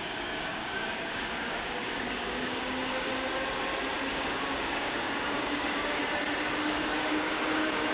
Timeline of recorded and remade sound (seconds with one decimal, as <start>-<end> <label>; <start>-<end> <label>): 0.0-3.1 remade; 3.1-4.1 recorded; 4.1-6.0 remade; 6.0-6.7 recorded; 6.7-7.9 remade